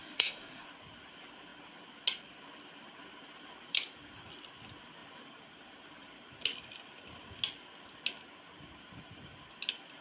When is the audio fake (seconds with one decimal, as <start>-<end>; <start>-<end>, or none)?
0.0-0.7

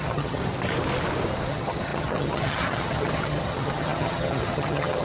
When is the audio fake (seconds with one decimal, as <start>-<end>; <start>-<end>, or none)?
0.0-0.4; 1.5-5.0